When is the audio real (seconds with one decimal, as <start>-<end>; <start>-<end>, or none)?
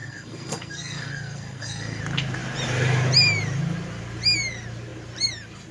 2.0-5.7